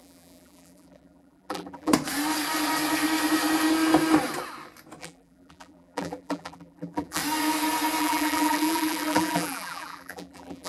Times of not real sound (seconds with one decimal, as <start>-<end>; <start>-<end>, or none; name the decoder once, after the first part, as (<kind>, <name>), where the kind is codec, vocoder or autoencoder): 0.0-1.9 (vocoder, BigVGAN v2); 5.0-7.2; 8.0-10.7